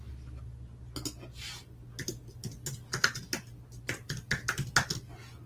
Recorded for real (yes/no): yes